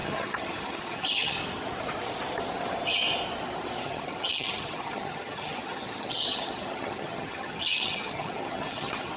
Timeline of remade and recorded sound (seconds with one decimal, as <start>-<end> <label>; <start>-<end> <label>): 0.0-1.4 remade; 1.4-3.8 recorded; 3.8-9.2 remade